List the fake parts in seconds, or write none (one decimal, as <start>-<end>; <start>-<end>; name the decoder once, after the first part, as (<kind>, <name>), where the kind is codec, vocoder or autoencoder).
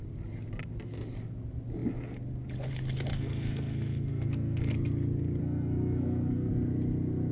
3.1-4.7 (codec, SNAC); 5.4-6.5